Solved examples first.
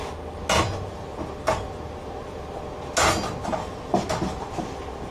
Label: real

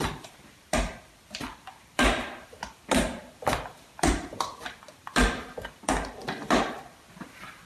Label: fake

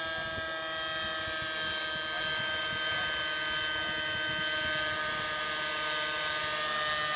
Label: real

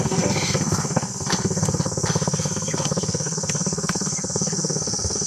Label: fake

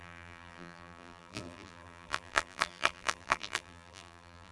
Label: fake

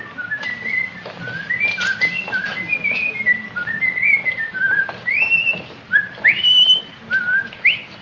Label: real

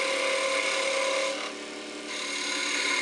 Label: real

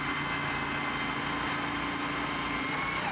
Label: real